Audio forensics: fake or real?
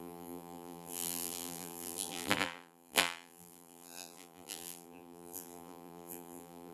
fake